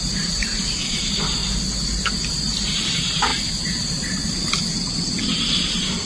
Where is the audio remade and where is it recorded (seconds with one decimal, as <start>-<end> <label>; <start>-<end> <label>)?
0.0-1.4 remade; 1.4-2.1 recorded; 2.1-3.3 remade; 3.3-3.8 recorded; 3.8-4.2 remade; 4.2-5.2 recorded; 5.2-6.1 remade